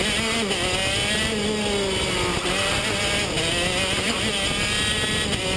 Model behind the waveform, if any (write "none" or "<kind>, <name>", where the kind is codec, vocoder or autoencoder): none